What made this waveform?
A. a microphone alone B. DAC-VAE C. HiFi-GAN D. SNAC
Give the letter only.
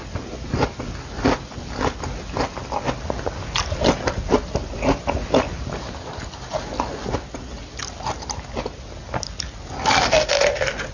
A